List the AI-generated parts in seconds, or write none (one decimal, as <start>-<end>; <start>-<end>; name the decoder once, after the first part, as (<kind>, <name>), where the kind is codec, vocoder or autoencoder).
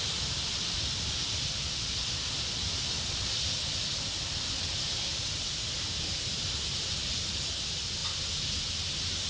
none